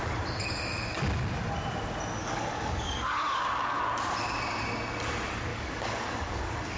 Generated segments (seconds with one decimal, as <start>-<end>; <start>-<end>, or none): 2.2-3.8; 5.5-6.8